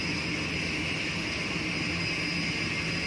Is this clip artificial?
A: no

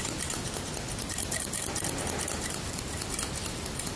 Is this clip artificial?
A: no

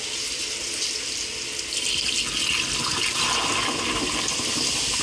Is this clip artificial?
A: no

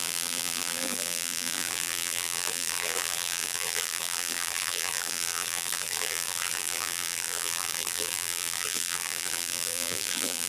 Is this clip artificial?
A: yes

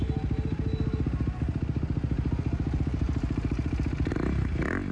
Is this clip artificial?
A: no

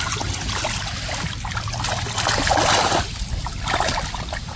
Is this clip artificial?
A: no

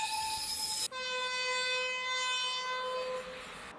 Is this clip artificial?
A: no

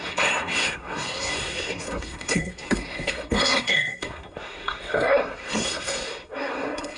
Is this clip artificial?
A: yes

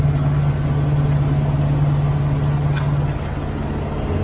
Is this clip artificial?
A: no